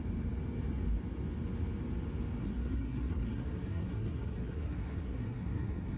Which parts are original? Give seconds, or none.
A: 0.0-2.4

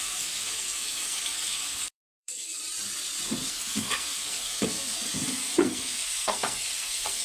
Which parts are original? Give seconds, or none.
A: 2.6-3.4

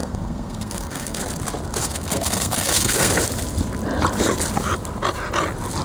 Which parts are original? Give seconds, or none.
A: 1.2-1.8; 3.1-5.8